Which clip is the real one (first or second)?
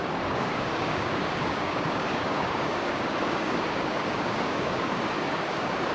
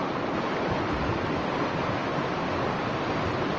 second